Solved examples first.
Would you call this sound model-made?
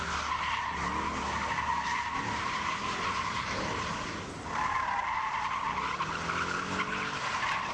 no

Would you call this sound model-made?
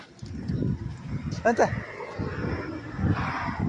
no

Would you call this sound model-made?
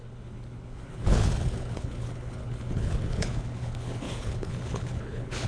yes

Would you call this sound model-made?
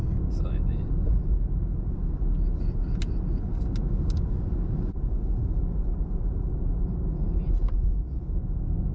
no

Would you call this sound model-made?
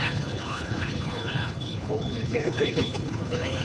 yes